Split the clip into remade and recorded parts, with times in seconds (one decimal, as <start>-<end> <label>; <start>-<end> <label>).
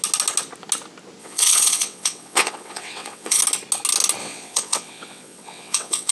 0.0-1.2 recorded; 1.2-3.4 remade; 3.4-4.2 recorded; 4.2-6.1 remade